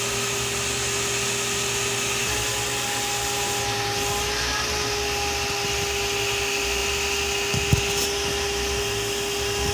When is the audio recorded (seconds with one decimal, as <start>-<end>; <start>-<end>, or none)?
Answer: 0.0-9.7